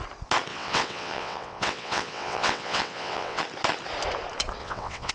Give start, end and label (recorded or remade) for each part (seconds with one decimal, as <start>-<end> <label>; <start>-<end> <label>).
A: 0.0-0.5 recorded; 0.5-3.4 remade; 3.4-4.6 recorded; 4.6-5.1 remade

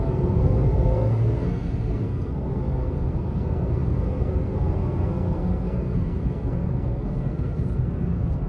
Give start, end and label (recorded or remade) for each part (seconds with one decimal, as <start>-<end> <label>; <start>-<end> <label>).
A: 0.0-8.5 remade

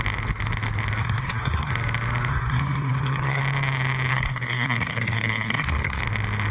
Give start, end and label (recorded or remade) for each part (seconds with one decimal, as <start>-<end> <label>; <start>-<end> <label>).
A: 0.0-1.0 recorded; 1.0-1.7 remade; 1.7-2.3 recorded; 2.3-3.4 remade; 3.4-4.1 recorded; 4.1-6.0 remade; 6.0-6.5 recorded

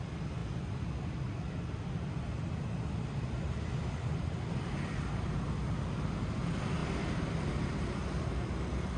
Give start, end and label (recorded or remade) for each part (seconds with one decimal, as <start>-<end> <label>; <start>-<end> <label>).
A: 0.0-9.0 recorded

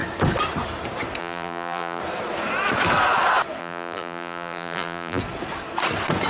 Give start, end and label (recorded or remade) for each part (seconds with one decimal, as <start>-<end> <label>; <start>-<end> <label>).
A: 0.0-1.2 recorded; 1.2-2.0 remade; 2.0-3.6 recorded; 3.6-5.2 remade; 5.2-6.3 recorded